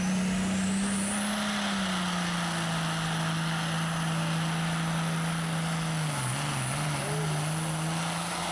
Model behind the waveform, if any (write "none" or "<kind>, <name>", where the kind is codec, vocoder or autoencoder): none